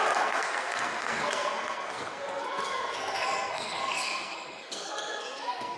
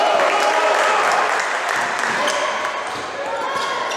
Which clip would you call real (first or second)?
second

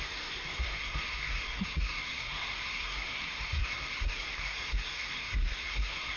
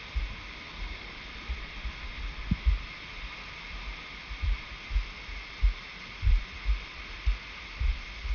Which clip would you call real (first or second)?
second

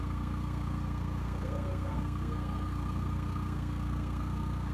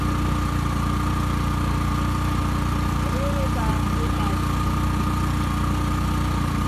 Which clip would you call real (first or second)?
second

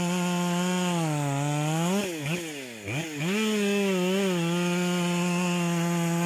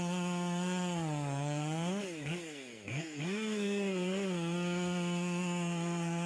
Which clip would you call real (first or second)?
first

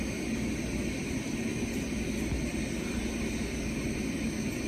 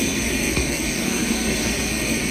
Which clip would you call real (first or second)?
first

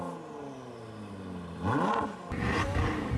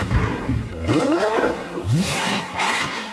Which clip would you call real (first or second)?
first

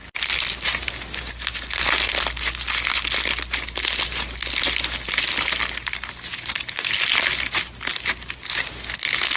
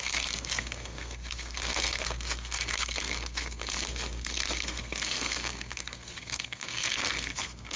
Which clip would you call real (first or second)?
first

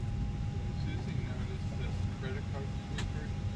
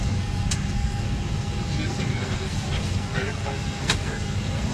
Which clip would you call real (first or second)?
first